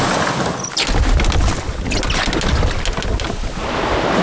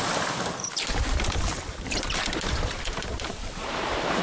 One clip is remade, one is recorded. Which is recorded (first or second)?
first